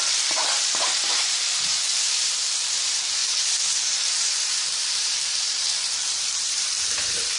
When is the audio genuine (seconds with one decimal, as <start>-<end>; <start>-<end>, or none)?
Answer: 3.2-3.8